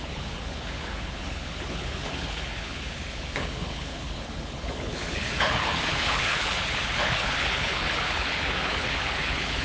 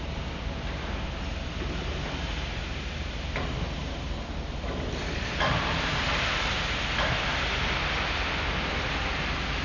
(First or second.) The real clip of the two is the second